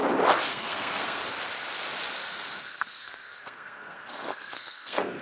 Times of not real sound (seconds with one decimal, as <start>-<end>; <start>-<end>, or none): 0.5-1.2; 2.6-5.2